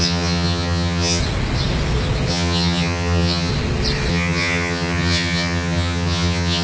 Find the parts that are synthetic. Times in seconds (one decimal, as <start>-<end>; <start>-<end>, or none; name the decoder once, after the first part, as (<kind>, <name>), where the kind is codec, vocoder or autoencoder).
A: 0.0-1.2 (vocoder, HiFi-GAN); 2.3-3.5; 4.1-6.6